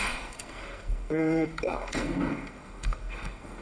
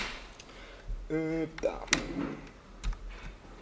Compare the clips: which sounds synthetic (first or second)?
first